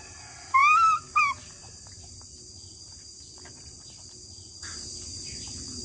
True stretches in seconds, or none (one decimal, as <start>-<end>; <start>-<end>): 0.0-5.8